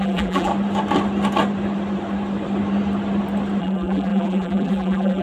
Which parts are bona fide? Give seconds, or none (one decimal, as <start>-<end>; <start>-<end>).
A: 0.5-3.6